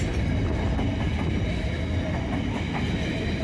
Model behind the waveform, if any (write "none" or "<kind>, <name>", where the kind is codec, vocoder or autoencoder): none